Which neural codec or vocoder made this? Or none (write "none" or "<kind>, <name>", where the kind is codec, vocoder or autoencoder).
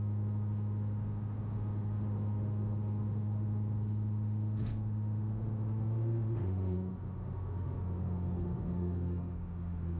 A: autoencoder, DAC-VAE